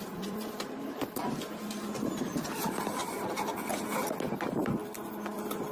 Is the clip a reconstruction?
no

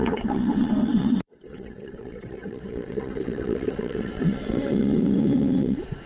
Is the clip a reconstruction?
yes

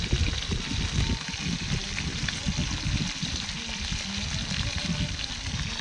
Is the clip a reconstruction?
no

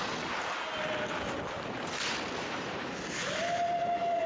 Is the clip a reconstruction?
no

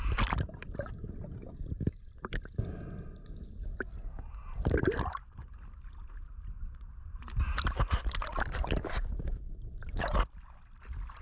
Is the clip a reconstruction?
no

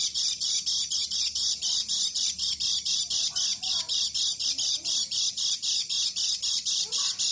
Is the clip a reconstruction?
no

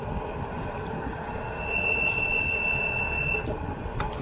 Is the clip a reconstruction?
no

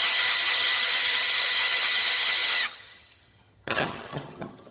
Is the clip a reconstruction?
yes